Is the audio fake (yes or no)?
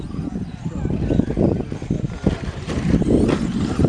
no